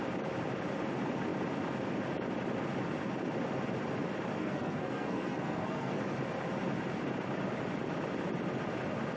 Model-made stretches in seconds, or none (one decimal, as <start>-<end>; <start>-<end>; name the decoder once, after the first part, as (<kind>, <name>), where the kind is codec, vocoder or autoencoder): 4.4-6.0 (codec, SNAC)